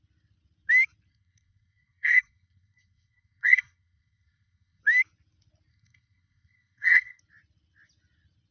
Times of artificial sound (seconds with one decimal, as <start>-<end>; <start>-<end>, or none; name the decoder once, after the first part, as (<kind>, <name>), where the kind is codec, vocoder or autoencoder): 1.1-4.8 (codec, SNAC); 5.7-7.2